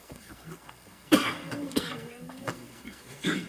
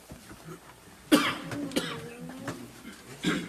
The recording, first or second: second